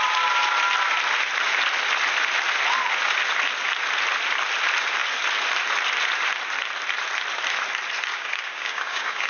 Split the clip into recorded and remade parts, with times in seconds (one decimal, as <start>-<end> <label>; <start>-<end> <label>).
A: 0.0-8.1 recorded; 8.1-9.3 remade